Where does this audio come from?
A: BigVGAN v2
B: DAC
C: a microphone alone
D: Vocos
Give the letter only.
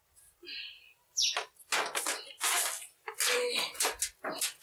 C